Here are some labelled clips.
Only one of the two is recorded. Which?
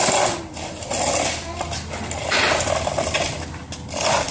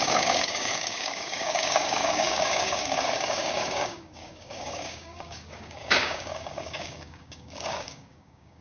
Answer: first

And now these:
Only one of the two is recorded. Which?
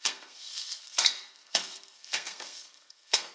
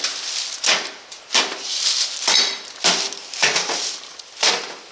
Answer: second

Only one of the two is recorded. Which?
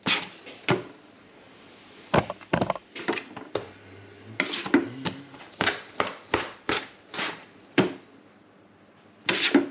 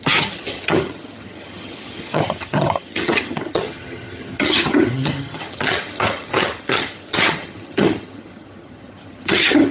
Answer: first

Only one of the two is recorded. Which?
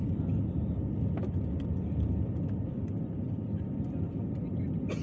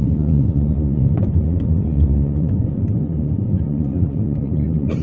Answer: first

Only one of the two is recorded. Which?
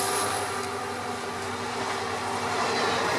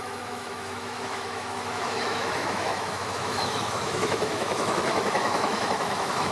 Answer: first